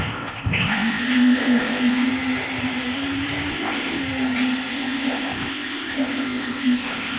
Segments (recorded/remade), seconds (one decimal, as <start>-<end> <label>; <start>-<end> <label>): 0.0-2.1 remade; 2.1-3.5 recorded; 3.5-4.0 remade; 4.0-4.7 recorded; 4.7-7.2 remade